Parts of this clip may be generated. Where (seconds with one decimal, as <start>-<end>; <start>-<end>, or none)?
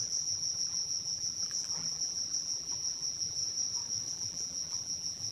0.0-3.4; 4.1-5.3